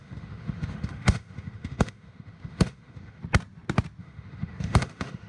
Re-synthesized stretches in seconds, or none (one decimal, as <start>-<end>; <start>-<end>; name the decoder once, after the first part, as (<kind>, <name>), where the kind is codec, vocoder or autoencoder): 0.0-3.2 (autoencoder, DAC-VAE); 4.0-5.3